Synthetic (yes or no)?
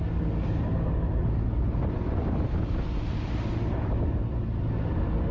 no